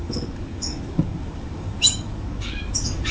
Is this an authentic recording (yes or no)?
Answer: no